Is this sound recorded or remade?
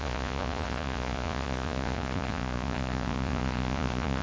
remade